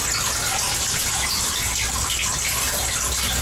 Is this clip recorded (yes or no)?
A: yes